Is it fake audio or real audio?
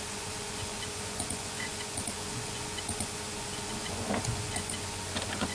fake